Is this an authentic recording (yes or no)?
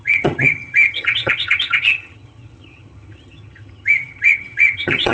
no